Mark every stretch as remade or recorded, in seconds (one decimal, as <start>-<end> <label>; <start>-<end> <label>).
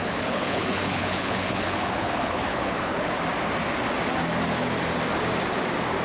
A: 0.0-3.1 remade; 3.1-6.0 recorded